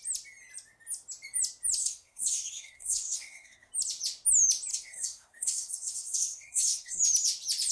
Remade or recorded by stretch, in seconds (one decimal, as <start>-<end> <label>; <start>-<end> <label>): 0.0-1.8 recorded; 1.8-3.7 remade; 3.7-4.7 recorded; 4.7-7.0 remade; 7.0-7.7 recorded